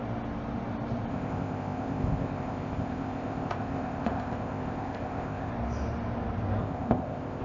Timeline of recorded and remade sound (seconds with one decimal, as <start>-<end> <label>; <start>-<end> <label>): 0.0-1.1 recorded; 1.1-5.5 remade; 5.5-6.6 recorded; 6.6-7.4 remade